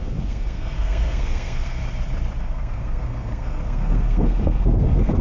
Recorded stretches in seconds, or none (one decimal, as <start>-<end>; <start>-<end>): 1.8-2.4